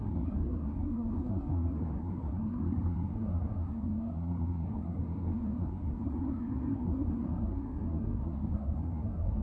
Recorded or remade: remade